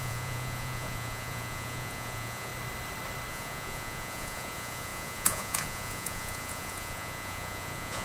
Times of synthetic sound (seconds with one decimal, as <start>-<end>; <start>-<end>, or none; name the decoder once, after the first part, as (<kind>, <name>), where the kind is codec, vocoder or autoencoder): 0.0-2.5 (vocoder, Vocos); 3.3-8.0